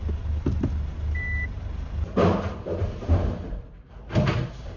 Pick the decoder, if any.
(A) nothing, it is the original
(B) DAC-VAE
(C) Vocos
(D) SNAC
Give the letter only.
A